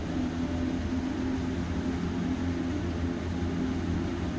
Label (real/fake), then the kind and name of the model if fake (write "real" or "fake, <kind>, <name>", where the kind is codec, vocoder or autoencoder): real